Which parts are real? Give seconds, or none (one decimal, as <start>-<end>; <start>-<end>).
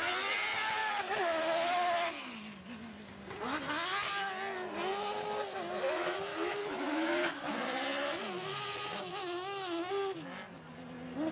0.0-6.3; 7.5-9.2; 9.9-11.3